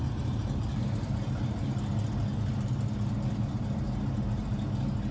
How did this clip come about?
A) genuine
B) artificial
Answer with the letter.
A